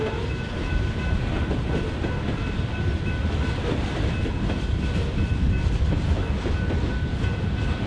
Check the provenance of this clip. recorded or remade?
recorded